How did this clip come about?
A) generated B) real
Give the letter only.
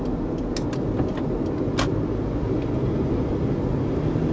B